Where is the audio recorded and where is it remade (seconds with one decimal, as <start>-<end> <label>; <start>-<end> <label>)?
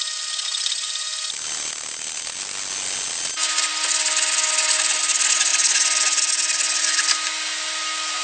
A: 0.0-8.2 recorded